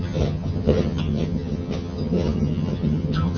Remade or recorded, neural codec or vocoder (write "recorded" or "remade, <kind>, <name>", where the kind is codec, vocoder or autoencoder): remade, vocoder, HiFi-GAN